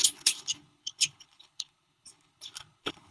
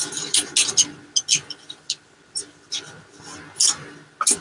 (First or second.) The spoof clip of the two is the first